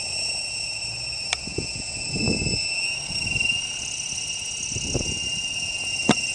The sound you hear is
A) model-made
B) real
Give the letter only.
B